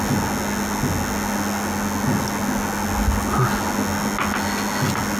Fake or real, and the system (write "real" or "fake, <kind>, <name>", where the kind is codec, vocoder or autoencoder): real